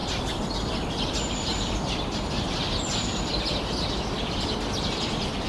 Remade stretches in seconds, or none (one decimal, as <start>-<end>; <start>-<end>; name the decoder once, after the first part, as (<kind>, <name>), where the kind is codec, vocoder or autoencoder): 0.0-0.6 (vocoder, BigVGAN v2); 1.5-3.3